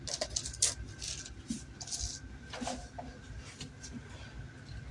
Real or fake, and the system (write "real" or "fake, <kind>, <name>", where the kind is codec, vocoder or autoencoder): real